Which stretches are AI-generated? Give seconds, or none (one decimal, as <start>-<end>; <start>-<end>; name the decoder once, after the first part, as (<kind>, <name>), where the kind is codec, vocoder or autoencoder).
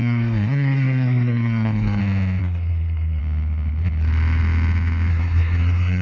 0.0-2.0 (codec, SNAC); 2.4-3.2; 5.1-6.0